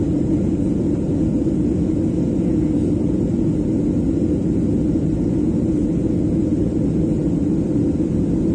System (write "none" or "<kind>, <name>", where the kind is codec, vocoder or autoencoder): none